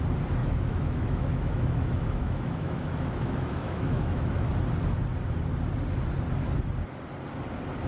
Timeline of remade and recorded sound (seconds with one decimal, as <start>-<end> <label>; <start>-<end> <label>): 0.0-0.4 recorded; 0.4-4.5 remade; 4.5-7.9 recorded